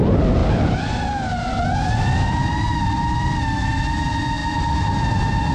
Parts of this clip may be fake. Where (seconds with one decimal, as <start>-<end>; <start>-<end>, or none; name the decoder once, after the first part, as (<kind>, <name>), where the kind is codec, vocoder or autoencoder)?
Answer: none